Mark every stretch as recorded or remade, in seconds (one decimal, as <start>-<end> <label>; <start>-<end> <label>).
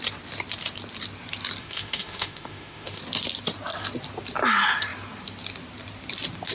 0.0-1.6 recorded; 1.6-3.0 remade; 3.0-6.5 recorded